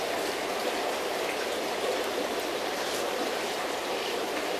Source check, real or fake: real